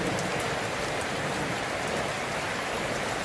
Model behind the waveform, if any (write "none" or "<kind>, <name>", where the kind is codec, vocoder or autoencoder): none